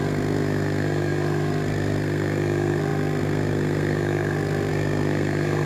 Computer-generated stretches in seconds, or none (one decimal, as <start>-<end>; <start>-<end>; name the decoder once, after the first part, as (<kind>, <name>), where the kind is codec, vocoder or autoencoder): 0.0-5.7 (codec, SNAC)

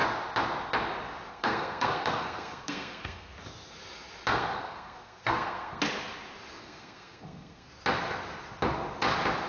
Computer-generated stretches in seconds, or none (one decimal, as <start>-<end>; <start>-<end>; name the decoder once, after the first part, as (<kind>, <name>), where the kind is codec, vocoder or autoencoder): 1.3-3.3 (codec, SNAC); 4.3-5.8; 6.6-7.7

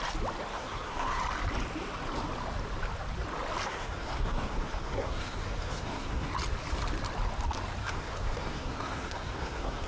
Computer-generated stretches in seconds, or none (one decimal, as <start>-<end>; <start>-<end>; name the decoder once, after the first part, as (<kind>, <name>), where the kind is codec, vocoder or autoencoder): 0.5-1.2 (codec, SNAC); 3.7-6.3; 7.8-9.9

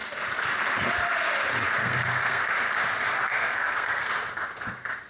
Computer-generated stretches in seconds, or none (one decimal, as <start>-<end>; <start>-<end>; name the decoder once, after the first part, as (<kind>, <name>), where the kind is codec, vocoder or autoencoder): 1.8-2.4 (codec, SNAC); 3.3-4.1

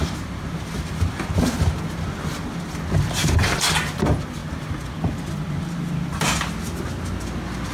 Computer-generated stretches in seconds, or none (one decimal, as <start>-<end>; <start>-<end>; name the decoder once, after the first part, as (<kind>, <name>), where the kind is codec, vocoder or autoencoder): none

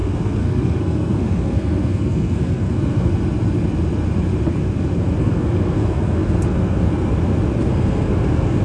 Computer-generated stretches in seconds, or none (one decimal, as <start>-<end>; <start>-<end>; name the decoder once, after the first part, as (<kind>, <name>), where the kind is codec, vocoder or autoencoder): 0.0-3.1 (codec, SNAC); 5.2-7.1; 7.6-8.6

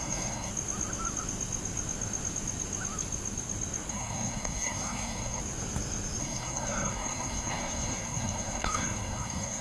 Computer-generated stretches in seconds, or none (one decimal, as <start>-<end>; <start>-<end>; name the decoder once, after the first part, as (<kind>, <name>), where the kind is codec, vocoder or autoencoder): 0.0-0.5 (codec, SNAC); 3.9-5.4; 6.2-9.6

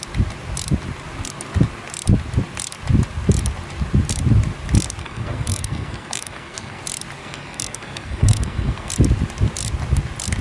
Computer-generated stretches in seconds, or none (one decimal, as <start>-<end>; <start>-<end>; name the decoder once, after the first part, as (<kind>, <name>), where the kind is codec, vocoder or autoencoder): 5.0-6.8 (codec, SNAC); 7.2-8.9